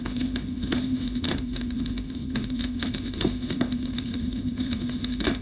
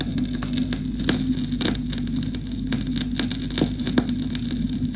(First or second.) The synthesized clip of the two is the first